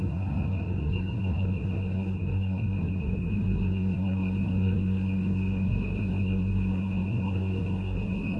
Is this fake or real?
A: fake